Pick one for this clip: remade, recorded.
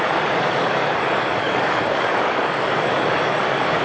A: remade